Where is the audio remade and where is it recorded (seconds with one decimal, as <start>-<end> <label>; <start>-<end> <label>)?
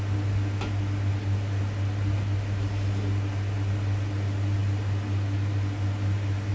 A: 0.0-6.5 recorded